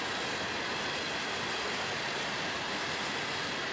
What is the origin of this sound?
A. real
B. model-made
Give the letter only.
A